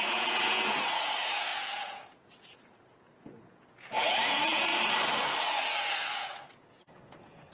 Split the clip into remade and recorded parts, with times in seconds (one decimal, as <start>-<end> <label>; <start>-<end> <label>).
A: 0.0-4.7 remade; 4.7-6.1 recorded; 6.1-7.5 remade